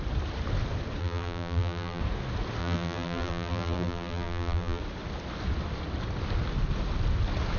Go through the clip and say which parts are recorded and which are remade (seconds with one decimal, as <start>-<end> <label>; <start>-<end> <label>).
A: 0.0-1.0 recorded; 1.0-2.0 remade; 2.0-2.6 recorded; 2.6-4.8 remade; 4.8-7.6 recorded